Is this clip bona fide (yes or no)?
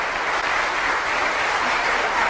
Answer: yes